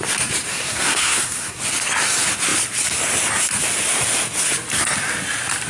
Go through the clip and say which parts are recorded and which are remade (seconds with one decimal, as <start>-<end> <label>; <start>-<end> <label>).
0.0-0.5 recorded; 0.5-1.6 remade; 1.6-5.7 recorded